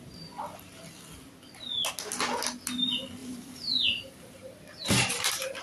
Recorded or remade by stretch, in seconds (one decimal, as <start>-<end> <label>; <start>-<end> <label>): 0.0-3.2 recorded; 3.2-5.6 remade